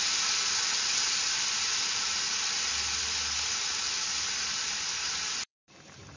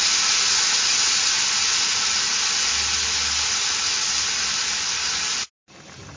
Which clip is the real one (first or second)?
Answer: second